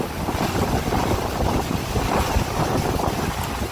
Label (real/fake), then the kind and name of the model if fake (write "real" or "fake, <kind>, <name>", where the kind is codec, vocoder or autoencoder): real